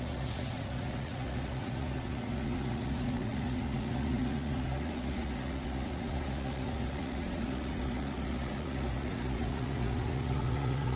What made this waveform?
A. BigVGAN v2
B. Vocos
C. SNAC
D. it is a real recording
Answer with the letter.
B